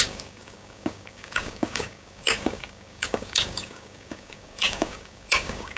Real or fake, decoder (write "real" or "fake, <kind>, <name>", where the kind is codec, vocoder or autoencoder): fake, codec, DAC